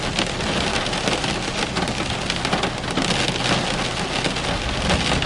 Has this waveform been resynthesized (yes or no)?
no